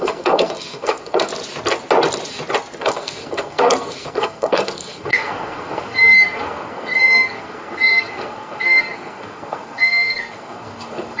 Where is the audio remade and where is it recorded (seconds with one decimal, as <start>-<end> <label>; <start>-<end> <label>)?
0.0-1.3 remade; 1.3-2.8 recorded; 2.8-11.2 remade